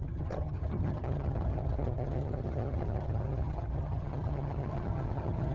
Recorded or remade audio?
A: remade